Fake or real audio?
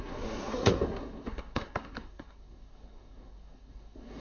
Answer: fake